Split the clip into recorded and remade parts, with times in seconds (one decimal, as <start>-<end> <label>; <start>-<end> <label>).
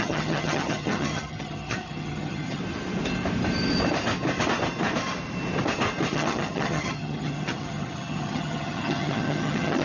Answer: 0.0-2.6 remade; 2.6-6.1 recorded; 6.1-9.8 remade